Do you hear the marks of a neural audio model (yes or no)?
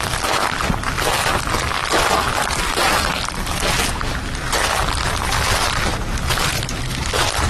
no